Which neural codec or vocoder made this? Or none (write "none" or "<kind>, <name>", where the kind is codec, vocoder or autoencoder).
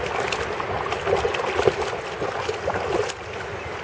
none